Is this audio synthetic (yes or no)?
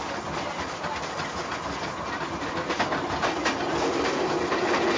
no